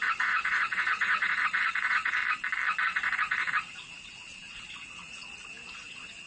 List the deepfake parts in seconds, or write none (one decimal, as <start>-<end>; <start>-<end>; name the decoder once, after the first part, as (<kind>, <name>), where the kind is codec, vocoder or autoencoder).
0.0-2.2 (vocoder, Vocos); 2.8-6.3